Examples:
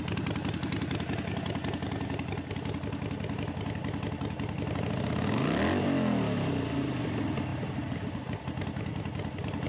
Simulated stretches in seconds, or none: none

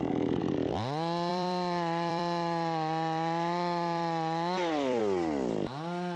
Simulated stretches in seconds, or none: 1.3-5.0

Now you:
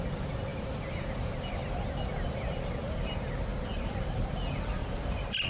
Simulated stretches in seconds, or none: 0.5-2.6; 3.5-4.3; 4.8-5.5